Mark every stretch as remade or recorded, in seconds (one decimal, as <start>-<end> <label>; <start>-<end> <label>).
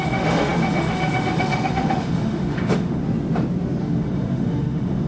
0.0-3.0 remade; 3.0-3.8 recorded; 3.8-5.1 remade